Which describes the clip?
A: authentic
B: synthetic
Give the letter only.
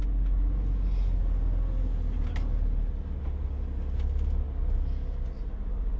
A